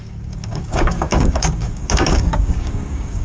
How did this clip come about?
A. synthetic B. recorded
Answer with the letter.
A